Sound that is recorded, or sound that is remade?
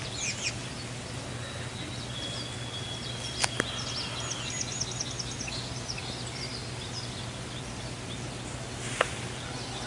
recorded